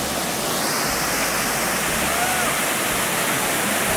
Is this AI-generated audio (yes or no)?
no